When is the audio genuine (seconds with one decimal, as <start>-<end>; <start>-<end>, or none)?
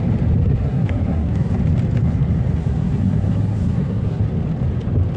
0.0-0.4; 1.5-2.6; 4.2-5.2